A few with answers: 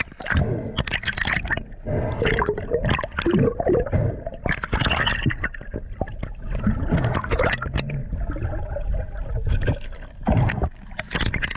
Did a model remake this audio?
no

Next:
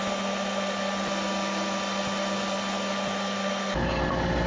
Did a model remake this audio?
no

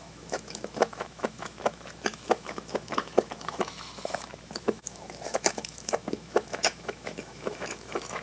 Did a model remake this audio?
yes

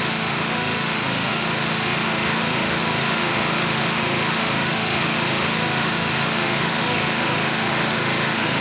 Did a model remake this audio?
yes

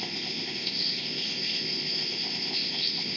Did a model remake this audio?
yes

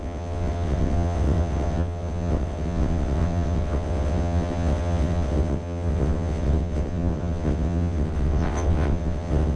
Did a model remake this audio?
yes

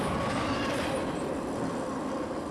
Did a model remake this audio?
no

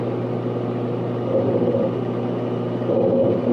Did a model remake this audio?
no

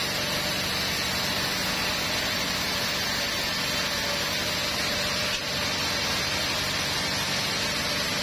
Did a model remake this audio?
no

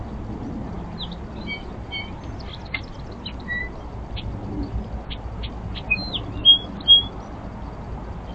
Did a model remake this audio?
no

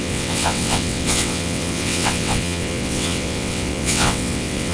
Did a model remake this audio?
yes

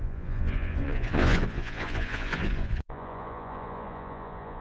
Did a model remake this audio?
yes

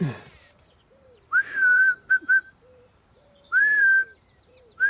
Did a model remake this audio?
yes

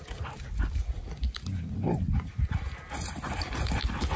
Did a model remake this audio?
no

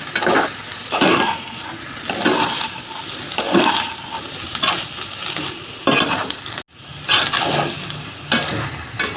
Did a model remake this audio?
no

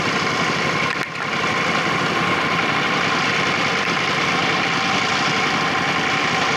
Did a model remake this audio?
no